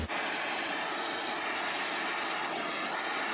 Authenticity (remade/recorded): recorded